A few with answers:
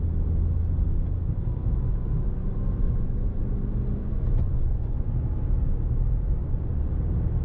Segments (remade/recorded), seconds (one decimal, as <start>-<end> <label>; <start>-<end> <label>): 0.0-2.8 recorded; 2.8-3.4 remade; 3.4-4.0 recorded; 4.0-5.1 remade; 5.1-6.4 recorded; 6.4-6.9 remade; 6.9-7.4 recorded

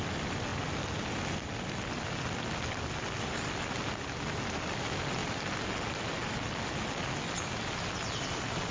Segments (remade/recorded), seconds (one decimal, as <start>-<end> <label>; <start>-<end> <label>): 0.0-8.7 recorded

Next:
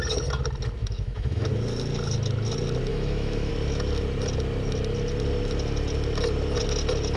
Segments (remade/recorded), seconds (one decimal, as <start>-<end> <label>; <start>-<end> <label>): 0.0-0.8 recorded; 0.8-1.5 remade; 1.5-2.9 recorded; 2.9-3.5 remade; 3.5-7.2 recorded

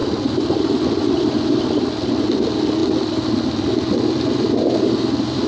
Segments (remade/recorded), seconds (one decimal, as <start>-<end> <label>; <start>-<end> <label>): 0.0-5.5 recorded

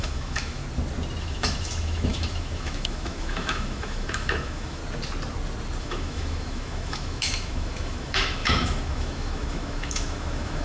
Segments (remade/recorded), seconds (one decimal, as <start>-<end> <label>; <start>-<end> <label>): 0.0-0.6 remade; 0.6-1.2 recorded; 1.2-4.8 remade; 4.8-5.8 recorded; 5.8-10.6 remade

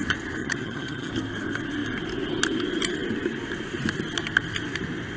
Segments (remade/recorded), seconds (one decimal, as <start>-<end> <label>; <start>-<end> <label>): 0.0-0.4 recorded; 0.4-1.1 remade; 1.1-5.2 recorded